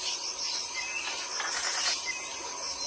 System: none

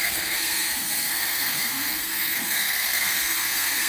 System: codec, SNAC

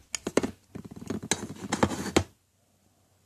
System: none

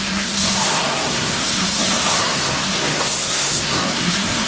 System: codec, SNAC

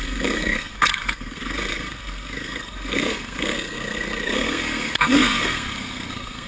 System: codec, SNAC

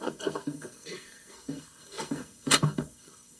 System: codec, SNAC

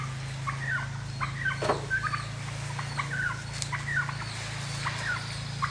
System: none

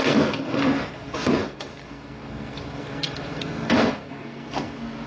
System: codec, SNAC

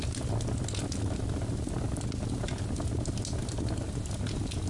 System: none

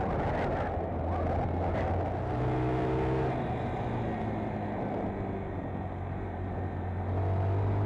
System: none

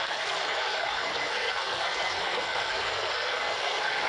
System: codec, SNAC